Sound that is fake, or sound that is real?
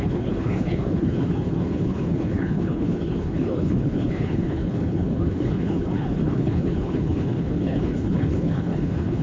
fake